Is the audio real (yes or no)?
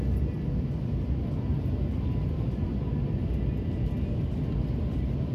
yes